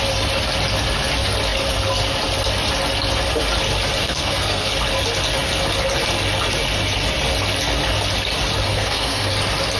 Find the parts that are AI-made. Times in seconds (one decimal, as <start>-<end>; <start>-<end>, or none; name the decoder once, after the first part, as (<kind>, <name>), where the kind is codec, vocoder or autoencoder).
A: 4.0-4.7 (codec, SNAC); 8.7-9.3